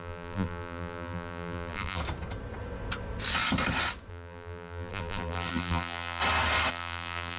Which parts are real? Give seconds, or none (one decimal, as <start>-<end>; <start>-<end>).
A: 2.0-4.1; 6.2-6.7